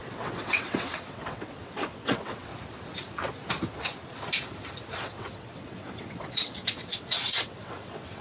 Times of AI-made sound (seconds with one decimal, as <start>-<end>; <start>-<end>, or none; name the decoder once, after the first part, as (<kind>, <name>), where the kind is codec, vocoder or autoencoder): 0.0-2.5 (vocoder, WaveNeXt); 5.0-8.2